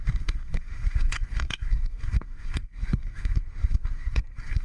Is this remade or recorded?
remade